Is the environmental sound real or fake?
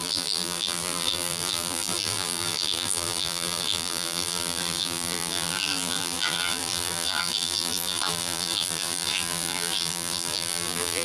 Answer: fake